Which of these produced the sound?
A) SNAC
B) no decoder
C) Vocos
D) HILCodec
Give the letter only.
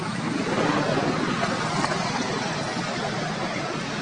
B